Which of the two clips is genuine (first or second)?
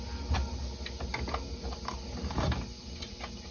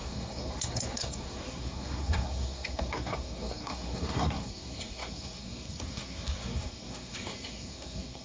first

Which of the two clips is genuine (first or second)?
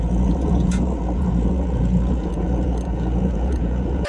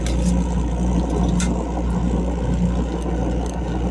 second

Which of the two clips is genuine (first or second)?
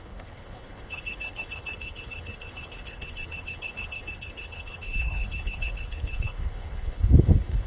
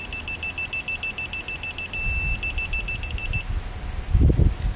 second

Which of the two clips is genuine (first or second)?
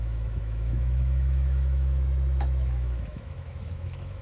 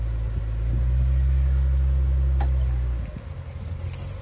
second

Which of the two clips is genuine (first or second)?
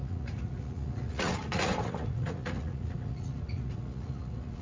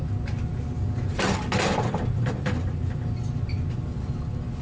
second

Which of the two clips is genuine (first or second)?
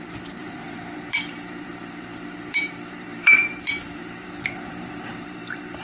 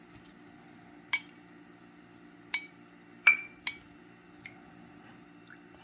second